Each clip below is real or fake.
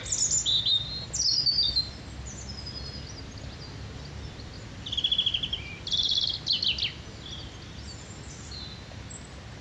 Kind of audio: real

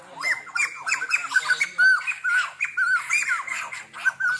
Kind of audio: real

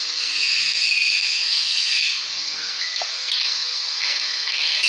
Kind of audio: fake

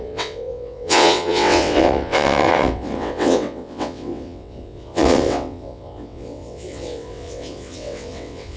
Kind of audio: fake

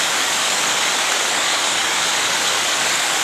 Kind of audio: fake